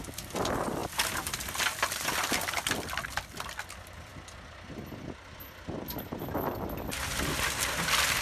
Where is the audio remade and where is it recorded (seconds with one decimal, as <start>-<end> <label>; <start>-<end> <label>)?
0.0-8.2 recorded

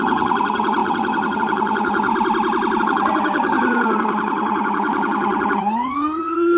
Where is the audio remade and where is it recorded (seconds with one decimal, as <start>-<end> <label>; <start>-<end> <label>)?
0.0-2.1 remade; 2.1-2.8 recorded; 2.8-6.6 remade

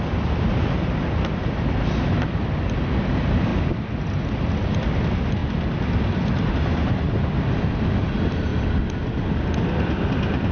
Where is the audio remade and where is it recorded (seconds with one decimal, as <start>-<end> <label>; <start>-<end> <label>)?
0.0-10.5 recorded

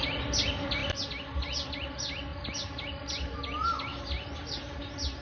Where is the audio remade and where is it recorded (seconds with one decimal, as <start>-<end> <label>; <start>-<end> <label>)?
0.0-5.2 recorded